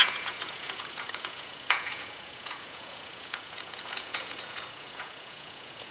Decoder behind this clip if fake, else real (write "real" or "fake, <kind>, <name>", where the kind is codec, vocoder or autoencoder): fake, vocoder, Vocos